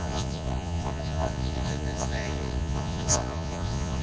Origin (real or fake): fake